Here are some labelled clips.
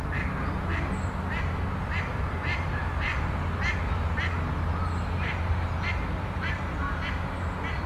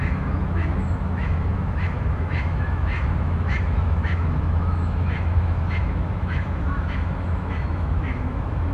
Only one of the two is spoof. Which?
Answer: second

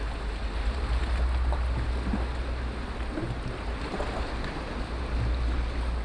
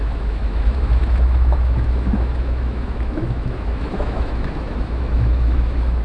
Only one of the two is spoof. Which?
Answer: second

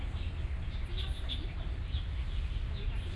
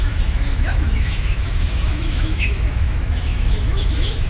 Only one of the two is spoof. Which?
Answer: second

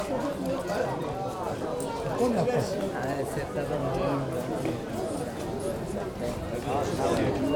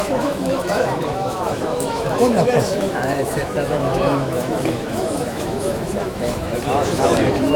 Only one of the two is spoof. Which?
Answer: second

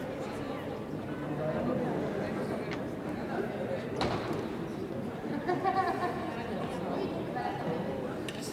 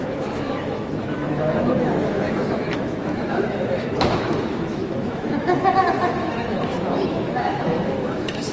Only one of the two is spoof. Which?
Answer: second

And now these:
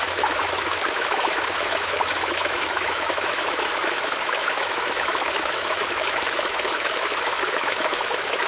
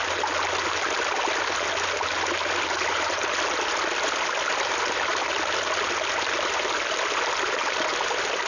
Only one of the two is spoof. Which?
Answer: first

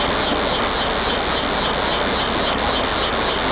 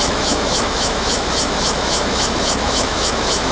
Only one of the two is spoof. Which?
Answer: second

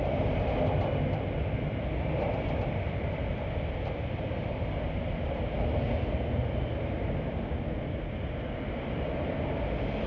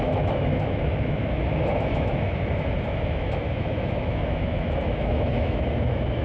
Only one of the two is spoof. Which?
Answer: second